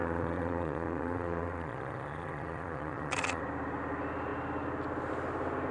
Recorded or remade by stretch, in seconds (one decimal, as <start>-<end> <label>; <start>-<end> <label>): 0.0-3.4 remade; 3.4-5.7 recorded